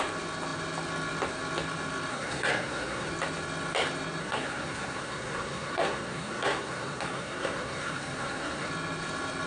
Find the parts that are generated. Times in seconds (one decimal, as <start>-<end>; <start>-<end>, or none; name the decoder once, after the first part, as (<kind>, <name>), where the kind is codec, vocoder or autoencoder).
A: 2.1-3.1 (codec, SNAC); 4.2-8.7